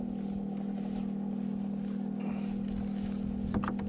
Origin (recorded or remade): recorded